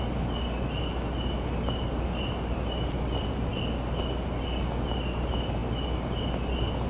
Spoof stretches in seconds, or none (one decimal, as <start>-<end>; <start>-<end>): none